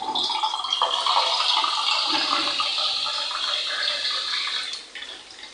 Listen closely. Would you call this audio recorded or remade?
recorded